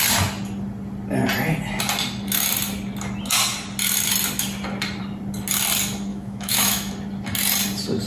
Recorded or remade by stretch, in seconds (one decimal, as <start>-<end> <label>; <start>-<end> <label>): 0.0-6.1 recorded; 6.1-6.9 remade; 6.9-8.1 recorded